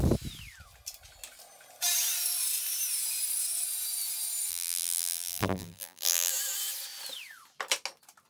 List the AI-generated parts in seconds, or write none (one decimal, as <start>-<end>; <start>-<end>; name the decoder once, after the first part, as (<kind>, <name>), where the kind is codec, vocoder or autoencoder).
4.5-6.3 (vocoder, BigVGAN v2)